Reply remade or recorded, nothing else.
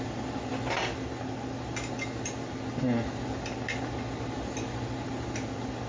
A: recorded